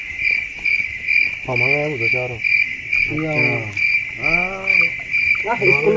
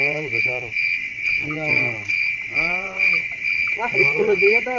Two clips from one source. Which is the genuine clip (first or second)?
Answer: first